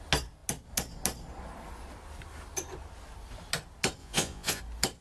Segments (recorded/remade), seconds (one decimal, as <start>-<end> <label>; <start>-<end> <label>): 0.0-4.0 recorded; 4.0-4.6 remade; 4.6-5.0 recorded